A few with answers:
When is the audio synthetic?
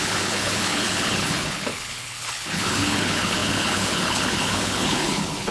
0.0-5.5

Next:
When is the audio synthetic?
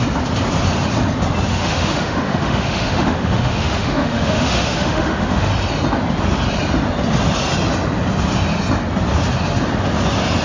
1.5-5.5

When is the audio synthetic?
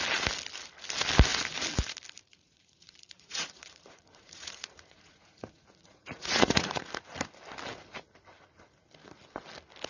2.3-6.9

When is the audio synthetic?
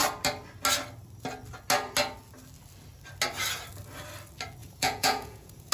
4.6-5.7